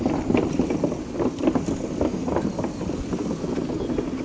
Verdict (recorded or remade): recorded